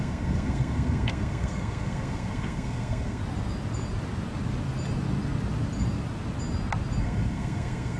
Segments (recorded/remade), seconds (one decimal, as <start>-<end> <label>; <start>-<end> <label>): 0.0-3.2 remade; 3.2-7.0 recorded; 7.0-8.0 remade